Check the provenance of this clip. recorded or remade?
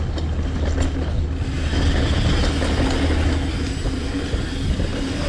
recorded